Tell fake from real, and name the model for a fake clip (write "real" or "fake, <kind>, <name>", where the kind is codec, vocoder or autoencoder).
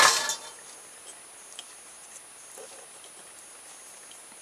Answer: real